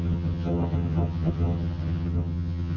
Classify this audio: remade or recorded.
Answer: remade